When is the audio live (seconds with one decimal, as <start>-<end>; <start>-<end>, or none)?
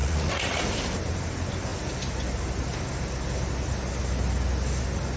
0.6-5.2